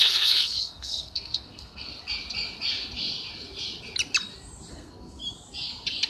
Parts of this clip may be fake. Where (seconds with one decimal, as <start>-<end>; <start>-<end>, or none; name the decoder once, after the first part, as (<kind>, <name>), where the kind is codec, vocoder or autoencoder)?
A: 0.0-1.9 (codec, SNAC); 4.7-5.2